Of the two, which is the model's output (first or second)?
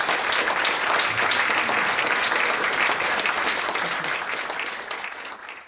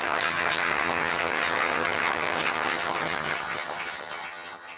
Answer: second